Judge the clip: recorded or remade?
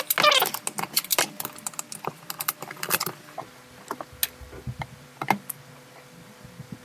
recorded